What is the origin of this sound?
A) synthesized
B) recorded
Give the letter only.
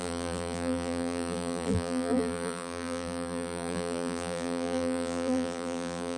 A